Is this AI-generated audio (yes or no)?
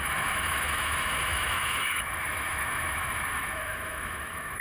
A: yes